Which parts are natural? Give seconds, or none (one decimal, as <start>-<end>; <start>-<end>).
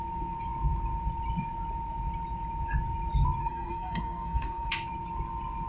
0.0-3.4; 4.7-5.7